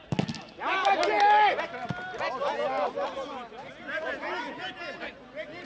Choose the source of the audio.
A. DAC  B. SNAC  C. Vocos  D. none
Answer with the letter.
D